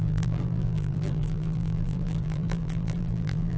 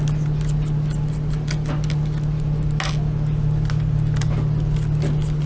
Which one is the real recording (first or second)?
second